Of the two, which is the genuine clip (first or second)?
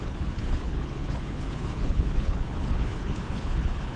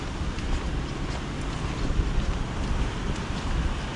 second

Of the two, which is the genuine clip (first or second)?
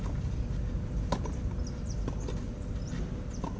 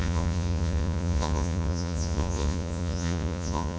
first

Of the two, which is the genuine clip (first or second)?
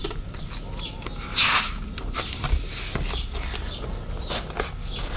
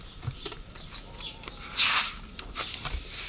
first